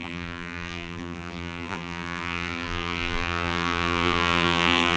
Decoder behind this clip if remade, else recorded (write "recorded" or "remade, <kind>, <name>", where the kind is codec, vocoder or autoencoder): remade, vocoder, BigVGAN v2